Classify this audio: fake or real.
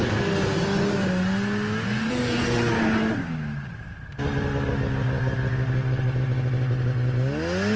real